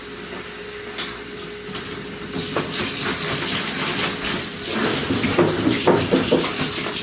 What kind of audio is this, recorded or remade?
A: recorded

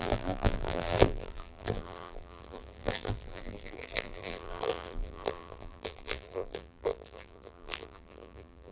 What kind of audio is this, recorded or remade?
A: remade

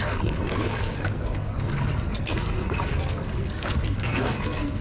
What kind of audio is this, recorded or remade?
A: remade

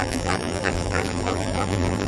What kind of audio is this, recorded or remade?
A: remade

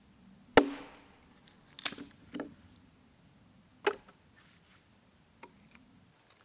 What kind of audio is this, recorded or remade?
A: recorded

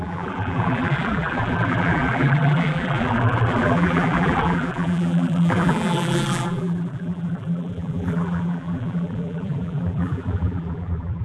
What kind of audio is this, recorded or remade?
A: remade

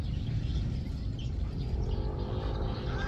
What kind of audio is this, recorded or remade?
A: recorded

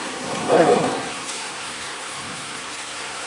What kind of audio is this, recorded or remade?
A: remade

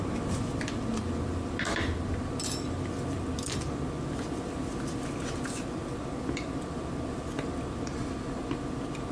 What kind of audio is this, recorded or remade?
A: remade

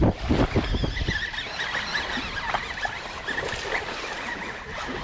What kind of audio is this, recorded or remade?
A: recorded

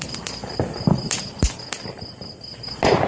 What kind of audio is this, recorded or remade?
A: recorded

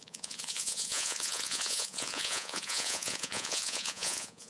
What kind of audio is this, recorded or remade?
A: remade